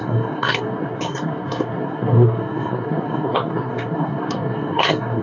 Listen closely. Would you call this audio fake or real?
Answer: fake